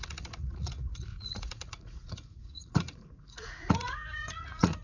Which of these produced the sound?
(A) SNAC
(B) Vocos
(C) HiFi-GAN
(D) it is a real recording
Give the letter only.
B